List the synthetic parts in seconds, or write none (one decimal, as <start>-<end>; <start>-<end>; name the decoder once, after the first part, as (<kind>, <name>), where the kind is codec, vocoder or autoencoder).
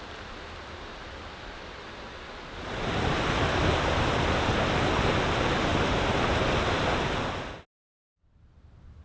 1.8-2.4 (vocoder, Vocos)